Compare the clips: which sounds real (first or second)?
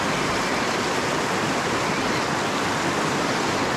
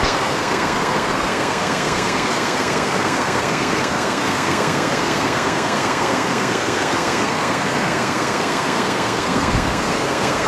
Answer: first